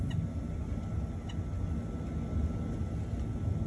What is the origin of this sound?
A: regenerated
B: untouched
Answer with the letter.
B